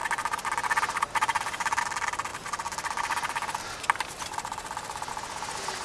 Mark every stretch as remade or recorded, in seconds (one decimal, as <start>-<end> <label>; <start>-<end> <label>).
0.0-5.8 recorded

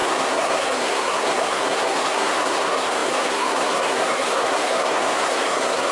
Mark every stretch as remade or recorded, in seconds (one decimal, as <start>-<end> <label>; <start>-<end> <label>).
0.0-5.9 remade